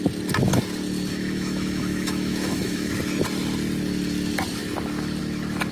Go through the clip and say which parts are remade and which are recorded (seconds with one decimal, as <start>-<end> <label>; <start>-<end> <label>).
0.0-1.1 recorded; 1.1-2.9 remade; 2.9-5.7 recorded